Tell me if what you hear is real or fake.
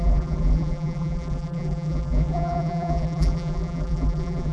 fake